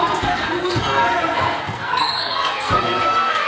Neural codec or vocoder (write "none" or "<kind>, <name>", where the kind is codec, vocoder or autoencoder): codec, SNAC